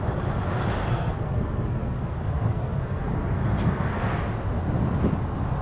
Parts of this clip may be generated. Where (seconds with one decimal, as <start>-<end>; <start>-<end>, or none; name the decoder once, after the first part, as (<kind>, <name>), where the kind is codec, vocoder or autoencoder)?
0.8-4.2 (codec, SNAC)